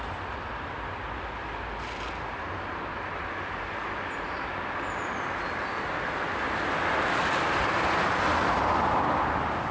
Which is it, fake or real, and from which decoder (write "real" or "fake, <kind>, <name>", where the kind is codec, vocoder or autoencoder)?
real